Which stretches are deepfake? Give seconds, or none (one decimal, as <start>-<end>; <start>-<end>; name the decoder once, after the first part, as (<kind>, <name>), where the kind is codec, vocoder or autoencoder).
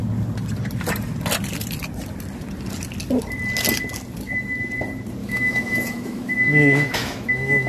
5.2-7.7 (autoencoder, DAC-VAE)